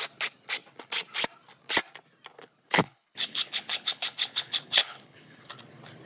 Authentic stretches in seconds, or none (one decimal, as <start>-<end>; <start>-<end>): 0.0-2.3; 5.5-6.1